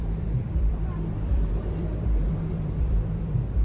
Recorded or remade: remade